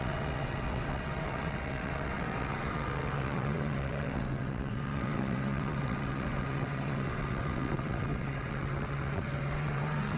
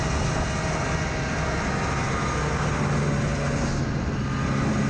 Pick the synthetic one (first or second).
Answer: first